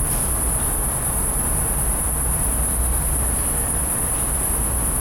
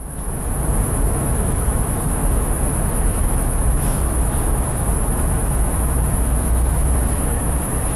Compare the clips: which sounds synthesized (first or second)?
second